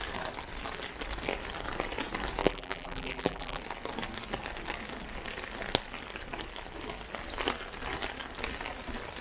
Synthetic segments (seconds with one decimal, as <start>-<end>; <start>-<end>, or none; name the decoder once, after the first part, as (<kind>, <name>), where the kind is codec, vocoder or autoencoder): 2.4-3.6 (vocoder, BigVGAN v2)